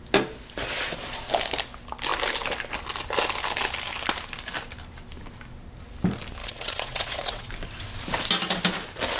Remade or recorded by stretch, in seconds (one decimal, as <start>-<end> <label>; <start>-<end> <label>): 0.0-6.4 recorded; 6.4-7.5 remade; 7.5-9.2 recorded